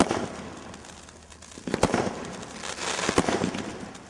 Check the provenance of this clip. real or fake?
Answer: real